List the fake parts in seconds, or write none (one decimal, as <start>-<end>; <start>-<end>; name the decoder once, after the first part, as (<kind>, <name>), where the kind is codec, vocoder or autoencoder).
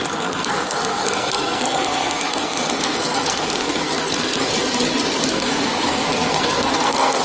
0.0-4.5 (codec, SNAC); 5.3-7.2